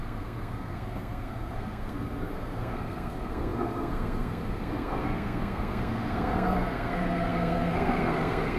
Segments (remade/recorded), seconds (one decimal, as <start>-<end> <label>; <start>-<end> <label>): 0.0-8.6 remade